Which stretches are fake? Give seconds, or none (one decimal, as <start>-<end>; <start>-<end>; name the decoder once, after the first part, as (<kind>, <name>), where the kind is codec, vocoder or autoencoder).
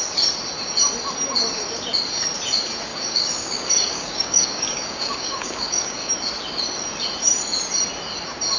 2.9-6.1 (codec, DAC)